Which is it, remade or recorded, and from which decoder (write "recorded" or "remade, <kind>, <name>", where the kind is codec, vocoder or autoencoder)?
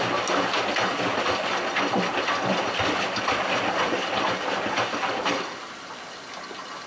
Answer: recorded